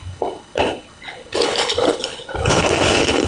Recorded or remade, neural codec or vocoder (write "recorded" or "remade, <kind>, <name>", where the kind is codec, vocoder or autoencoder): remade, codec, HILCodec